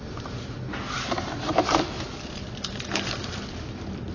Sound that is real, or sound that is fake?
fake